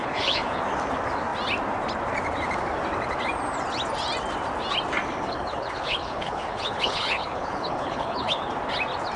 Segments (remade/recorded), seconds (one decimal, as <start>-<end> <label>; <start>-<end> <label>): 0.0-0.6 remade; 0.6-5.3 recorded; 5.3-8.5 remade; 8.5-9.2 recorded